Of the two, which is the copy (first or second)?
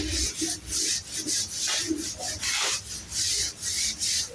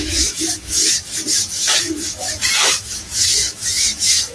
second